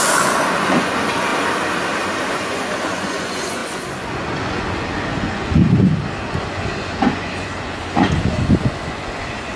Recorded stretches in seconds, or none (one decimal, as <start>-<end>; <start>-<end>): 1.3-2.3; 5.6-6.4